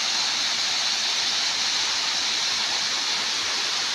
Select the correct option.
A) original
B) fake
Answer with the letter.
A